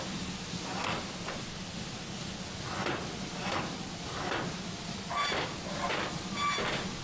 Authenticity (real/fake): real